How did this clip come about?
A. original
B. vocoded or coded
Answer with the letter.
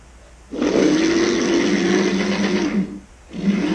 A